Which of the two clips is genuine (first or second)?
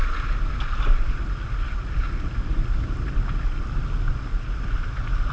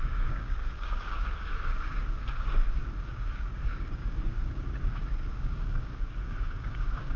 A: first